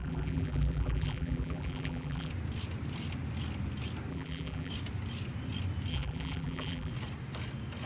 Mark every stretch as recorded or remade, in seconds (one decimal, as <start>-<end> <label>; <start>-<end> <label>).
0.0-2.3 remade; 2.3-4.1 recorded; 4.1-4.7 remade; 4.7-5.9 recorded; 5.9-6.9 remade; 6.9-7.9 recorded